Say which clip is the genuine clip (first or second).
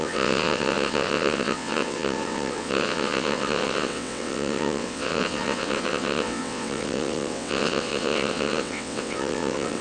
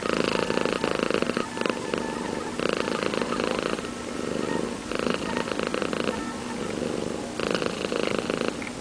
second